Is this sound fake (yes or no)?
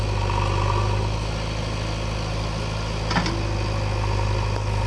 no